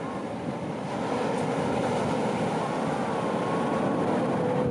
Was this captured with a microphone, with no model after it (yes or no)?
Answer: yes